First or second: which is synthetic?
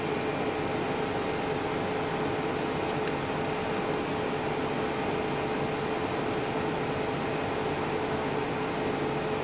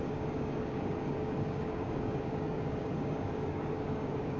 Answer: second